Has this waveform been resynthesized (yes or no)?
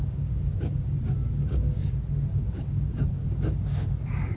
yes